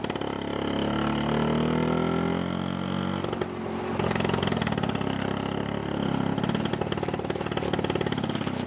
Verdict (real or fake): real